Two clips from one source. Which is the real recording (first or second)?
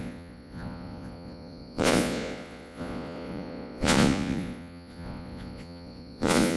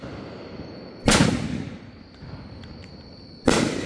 second